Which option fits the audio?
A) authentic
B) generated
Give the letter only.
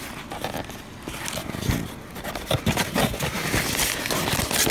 A